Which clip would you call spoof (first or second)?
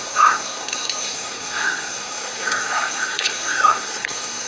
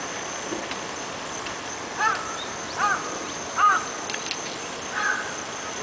first